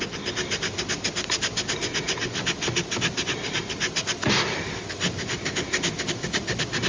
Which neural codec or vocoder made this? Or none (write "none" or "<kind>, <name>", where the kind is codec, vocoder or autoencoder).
none